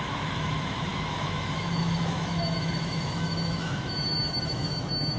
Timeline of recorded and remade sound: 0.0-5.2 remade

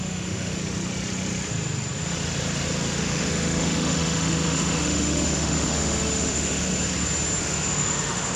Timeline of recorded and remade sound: 0.0-0.6 remade; 0.6-3.0 recorded; 3.0-6.7 remade; 6.7-7.4 recorded; 7.4-8.4 remade

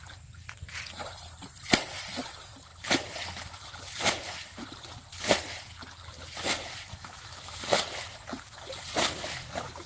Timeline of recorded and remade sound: 0.0-6.9 recorded; 6.9-7.6 remade; 7.6-9.9 recorded

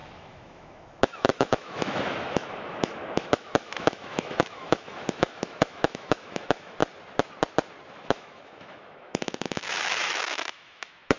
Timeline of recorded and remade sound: 0.0-6.8 remade; 6.8-7.9 recorded; 7.9-11.2 remade